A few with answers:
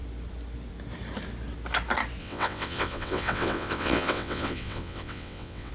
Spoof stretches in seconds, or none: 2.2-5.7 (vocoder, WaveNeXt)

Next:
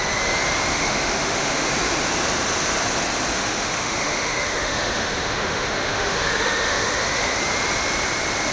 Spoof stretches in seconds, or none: 0.7-1.7 (autoencoder, DAC-VAE); 3.3-7.4

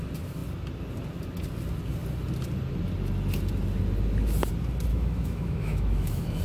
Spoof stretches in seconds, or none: 4.9-6.4 (autoencoder, DAC-VAE)

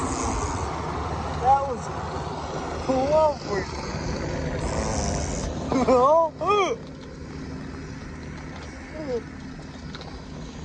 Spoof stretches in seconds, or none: none

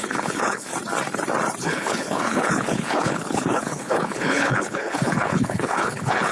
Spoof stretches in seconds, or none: 0.0-0.7 (codec, HILCodec); 1.6-6.3

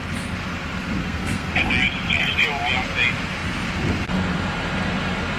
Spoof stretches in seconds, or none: 1.0-1.5 (codec, SNAC)

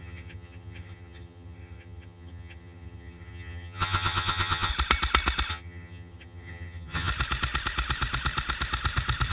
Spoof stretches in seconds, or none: 0.0-4.7 (vocoder, HiFi-GAN); 5.5-7.1